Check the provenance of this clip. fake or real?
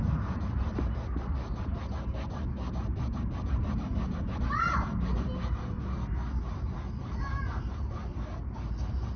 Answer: real